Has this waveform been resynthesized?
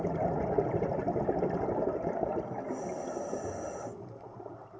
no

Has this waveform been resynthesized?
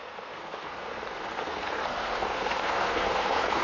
yes